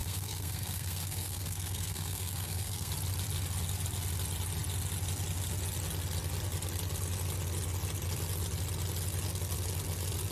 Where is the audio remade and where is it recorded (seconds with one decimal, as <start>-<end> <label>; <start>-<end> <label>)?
0.0-2.9 remade; 2.9-10.3 recorded